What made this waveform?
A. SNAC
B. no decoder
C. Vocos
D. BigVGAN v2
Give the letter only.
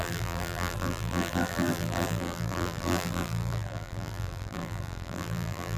D